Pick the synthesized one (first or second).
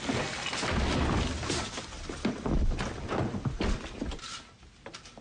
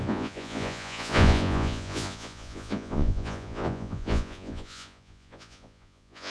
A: second